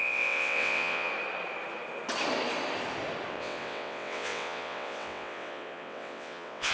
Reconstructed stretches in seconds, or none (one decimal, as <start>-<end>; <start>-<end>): 0.0-1.1; 3.3-6.7